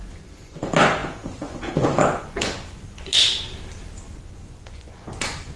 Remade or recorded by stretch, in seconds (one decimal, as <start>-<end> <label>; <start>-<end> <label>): 0.0-3.1 remade; 3.1-4.2 recorded; 4.2-5.6 remade